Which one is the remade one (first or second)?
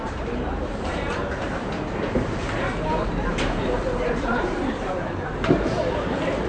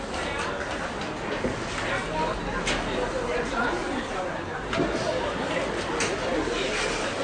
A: first